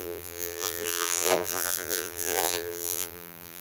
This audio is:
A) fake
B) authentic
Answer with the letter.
A